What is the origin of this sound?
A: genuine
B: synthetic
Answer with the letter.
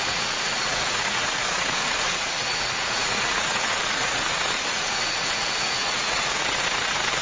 B